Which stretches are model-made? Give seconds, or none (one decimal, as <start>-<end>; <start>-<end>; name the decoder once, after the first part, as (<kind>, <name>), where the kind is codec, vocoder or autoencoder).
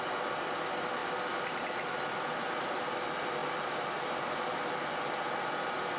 none